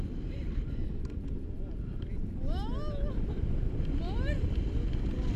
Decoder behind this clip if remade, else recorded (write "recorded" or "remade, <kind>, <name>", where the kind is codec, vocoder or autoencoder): recorded